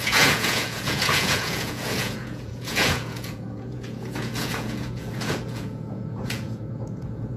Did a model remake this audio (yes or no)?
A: yes